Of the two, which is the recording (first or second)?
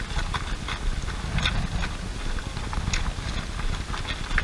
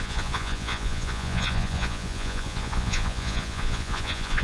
first